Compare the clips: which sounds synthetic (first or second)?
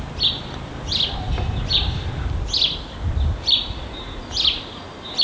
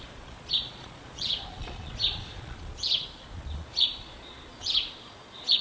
second